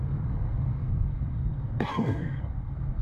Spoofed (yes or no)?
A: yes